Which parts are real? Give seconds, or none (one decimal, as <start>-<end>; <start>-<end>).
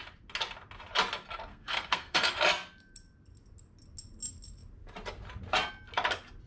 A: 0.0-1.5; 2.3-6.5